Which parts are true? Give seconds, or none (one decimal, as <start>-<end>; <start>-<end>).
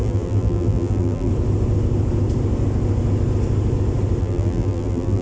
1.3-4.2